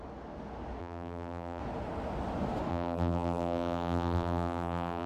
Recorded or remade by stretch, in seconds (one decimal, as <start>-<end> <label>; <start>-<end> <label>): 0.0-0.8 recorded; 0.8-1.6 remade; 1.6-2.7 recorded; 2.7-5.1 remade